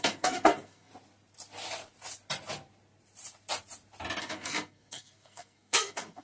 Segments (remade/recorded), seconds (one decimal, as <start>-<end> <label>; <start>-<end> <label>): 0.0-0.9 remade; 0.9-4.2 recorded; 4.2-6.2 remade